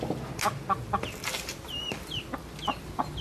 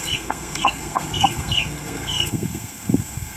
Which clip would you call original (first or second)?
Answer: first